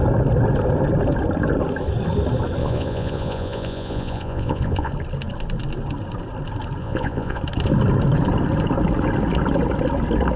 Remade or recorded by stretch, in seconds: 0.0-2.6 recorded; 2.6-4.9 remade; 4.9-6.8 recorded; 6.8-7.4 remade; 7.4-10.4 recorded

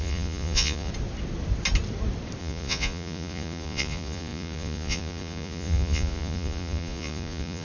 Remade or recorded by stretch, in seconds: 0.0-0.9 remade; 0.9-2.4 recorded; 2.4-7.6 remade

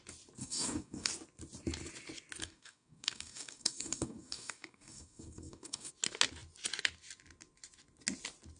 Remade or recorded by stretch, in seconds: 0.0-0.4 recorded; 0.4-1.1 remade; 1.1-2.4 recorded; 2.4-5.9 remade; 5.9-8.6 recorded

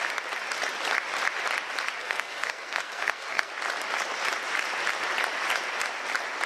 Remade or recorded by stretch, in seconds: 0.0-2.0 recorded; 2.0-3.5 remade; 3.5-6.5 recorded

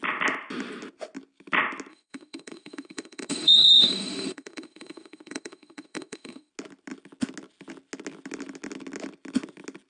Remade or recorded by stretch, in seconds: 0.0-1.9 recorded; 1.9-6.5 remade; 6.5-9.9 recorded